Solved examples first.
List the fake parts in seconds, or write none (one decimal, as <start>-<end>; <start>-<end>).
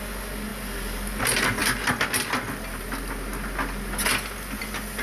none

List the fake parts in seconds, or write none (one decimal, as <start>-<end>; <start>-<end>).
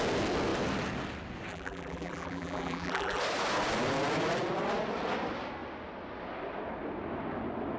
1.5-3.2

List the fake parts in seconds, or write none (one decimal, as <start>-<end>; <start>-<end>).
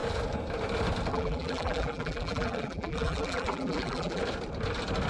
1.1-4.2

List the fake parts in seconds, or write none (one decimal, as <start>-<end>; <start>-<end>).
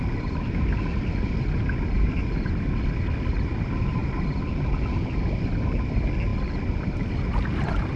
0.9-1.6